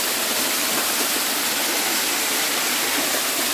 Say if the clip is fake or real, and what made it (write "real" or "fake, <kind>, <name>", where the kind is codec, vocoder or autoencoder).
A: real